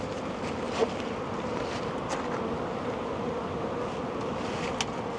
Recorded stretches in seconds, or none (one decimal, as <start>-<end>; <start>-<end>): 0.0-5.2